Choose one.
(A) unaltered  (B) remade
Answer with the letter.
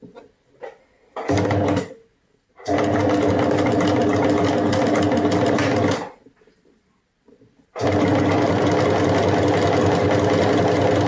A